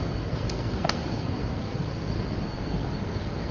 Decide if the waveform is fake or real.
fake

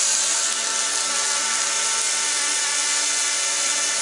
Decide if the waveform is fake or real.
real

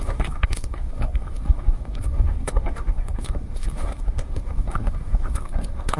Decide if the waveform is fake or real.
fake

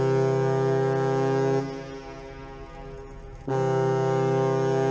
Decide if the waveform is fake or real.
real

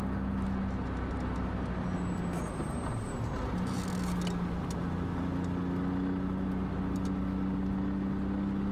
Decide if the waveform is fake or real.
real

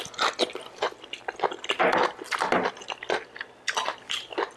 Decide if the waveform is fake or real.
real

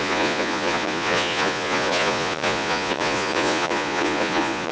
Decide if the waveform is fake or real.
fake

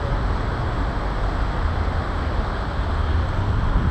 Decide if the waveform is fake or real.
real